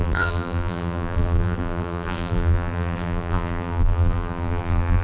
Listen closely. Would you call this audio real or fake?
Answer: fake